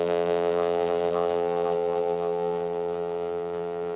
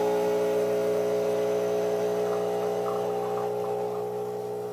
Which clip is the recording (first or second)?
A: second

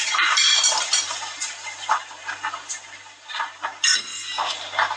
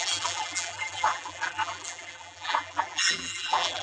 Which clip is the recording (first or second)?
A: first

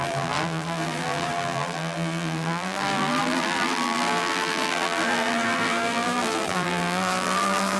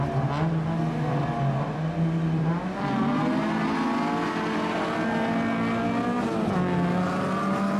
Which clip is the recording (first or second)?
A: second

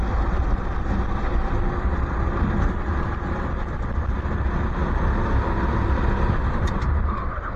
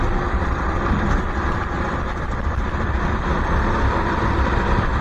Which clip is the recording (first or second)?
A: first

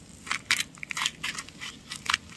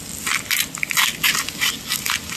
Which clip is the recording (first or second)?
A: second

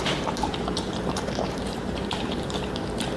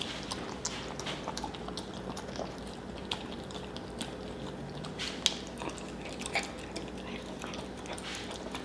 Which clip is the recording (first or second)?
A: second